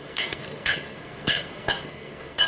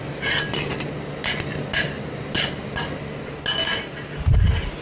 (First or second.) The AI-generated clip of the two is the first